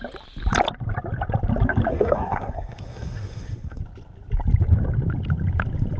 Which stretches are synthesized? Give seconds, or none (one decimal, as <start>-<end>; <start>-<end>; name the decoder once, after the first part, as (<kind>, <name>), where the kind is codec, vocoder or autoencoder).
1.9-3.8 (codec, SNAC)